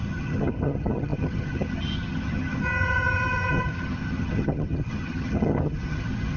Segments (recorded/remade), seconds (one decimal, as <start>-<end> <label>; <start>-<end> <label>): 0.0-6.4 remade